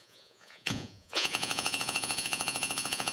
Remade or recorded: remade